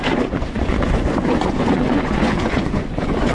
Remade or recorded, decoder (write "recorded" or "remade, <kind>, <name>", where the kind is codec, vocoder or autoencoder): remade, vocoder, Vocos